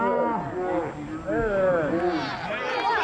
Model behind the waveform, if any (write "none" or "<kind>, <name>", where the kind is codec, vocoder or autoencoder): none